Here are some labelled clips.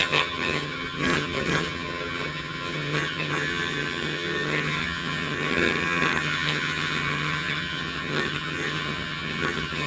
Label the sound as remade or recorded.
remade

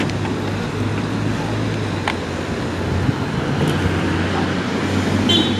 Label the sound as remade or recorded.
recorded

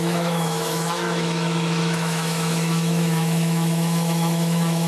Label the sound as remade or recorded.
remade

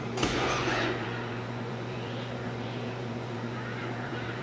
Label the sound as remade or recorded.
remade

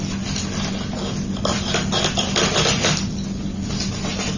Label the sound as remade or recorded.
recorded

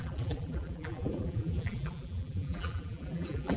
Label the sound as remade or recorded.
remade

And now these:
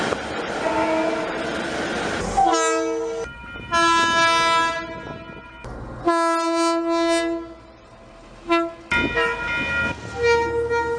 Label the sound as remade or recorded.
recorded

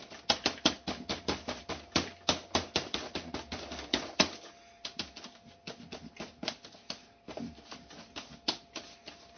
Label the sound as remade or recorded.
recorded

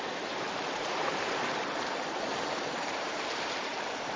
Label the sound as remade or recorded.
recorded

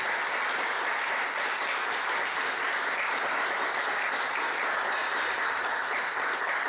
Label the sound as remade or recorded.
recorded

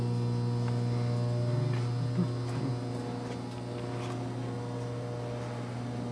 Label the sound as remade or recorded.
recorded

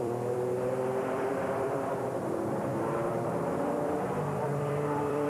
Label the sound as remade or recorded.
remade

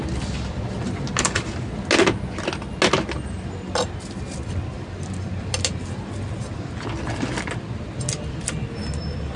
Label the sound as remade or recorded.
recorded